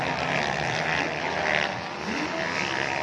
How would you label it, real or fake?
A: real